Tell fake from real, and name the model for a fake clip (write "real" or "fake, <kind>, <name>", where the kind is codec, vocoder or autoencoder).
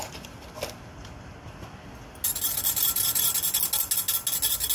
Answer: real